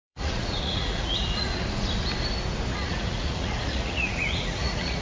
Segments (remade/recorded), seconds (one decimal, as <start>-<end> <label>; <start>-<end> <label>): 0.0-1.6 remade; 1.6-2.7 recorded; 2.7-5.0 remade

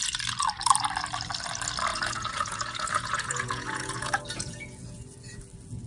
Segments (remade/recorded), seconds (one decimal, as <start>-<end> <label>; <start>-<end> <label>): 0.0-1.9 recorded; 1.9-5.4 remade; 5.4-5.9 recorded